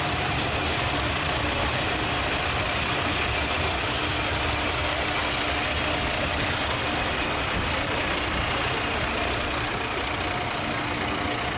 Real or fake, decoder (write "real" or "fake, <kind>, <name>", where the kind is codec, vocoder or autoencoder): real